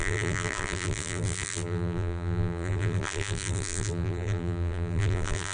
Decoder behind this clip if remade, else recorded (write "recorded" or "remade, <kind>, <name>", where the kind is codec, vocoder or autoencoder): remade, vocoder, BigVGAN v2